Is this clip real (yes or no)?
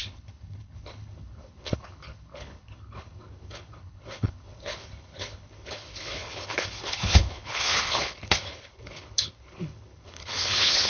no